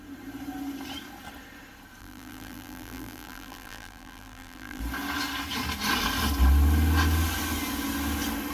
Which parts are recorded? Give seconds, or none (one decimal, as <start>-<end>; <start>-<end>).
0.0-2.0; 4.8-8.5